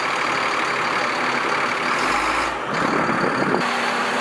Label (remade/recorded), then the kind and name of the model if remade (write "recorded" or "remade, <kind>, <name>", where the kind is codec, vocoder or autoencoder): recorded